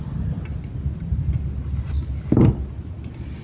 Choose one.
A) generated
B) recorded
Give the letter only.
B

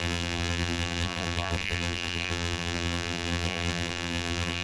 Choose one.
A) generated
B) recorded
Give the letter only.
A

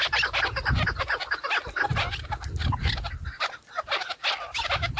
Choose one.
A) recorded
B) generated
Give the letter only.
A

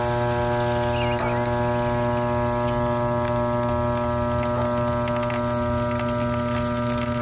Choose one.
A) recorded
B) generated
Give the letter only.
A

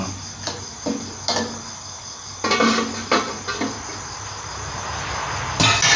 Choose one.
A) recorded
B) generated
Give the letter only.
A